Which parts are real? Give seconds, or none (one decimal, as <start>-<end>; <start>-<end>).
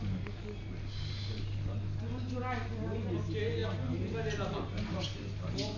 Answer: 0.0-5.8